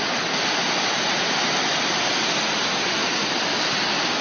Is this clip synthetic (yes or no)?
no